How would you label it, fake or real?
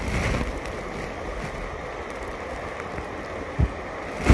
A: real